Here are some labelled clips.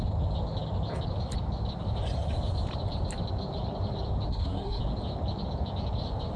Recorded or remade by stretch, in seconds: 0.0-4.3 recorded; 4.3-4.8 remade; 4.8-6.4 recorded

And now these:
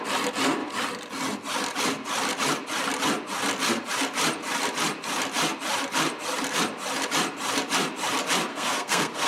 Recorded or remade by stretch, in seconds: 0.0-8.5 recorded; 8.5-9.3 remade